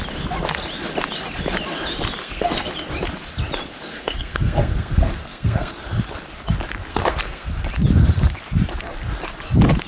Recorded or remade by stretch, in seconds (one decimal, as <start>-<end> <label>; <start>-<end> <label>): 0.0-2.2 recorded; 2.2-2.7 remade; 2.7-3.9 recorded; 3.9-5.7 remade; 5.7-6.9 recorded; 6.9-7.5 remade; 7.5-9.9 recorded